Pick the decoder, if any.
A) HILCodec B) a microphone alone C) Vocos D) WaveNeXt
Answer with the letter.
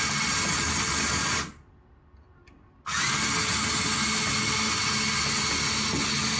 B